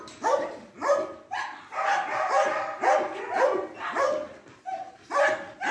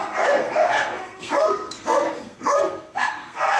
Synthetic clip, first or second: second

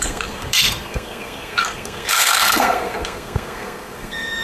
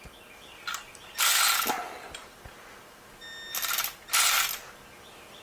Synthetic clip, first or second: first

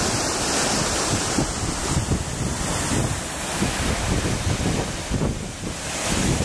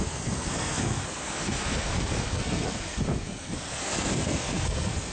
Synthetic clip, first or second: second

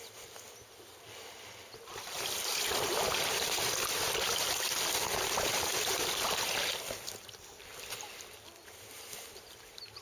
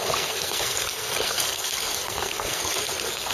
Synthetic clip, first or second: second